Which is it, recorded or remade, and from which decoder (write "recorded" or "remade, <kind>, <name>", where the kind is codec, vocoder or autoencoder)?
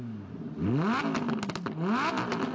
recorded